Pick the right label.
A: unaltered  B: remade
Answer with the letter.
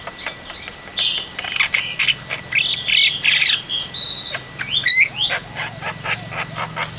A